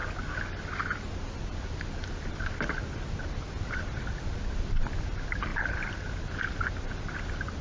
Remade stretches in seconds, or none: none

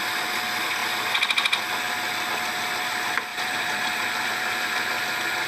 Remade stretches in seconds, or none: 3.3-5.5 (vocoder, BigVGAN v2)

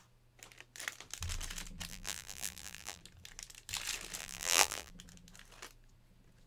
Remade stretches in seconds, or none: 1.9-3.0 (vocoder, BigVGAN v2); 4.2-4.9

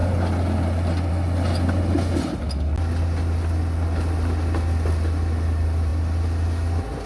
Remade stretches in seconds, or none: none